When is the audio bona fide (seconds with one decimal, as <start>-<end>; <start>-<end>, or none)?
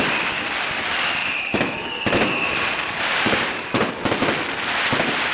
0.0-1.2; 3.9-5.3